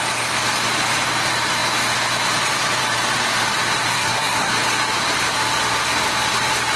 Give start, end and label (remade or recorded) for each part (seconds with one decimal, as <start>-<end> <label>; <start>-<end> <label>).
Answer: 0.0-3.9 recorded; 3.9-4.5 remade; 4.5-6.8 recorded